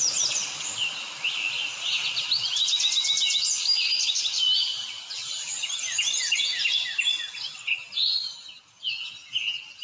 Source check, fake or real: real